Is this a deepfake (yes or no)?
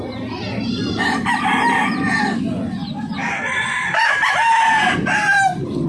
no